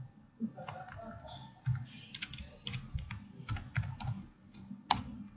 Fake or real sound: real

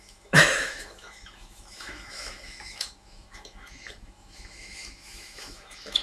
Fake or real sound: fake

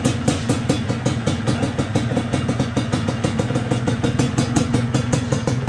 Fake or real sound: fake